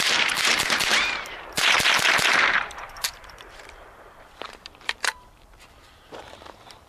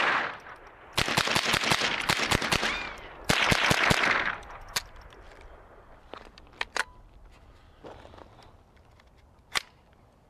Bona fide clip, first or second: second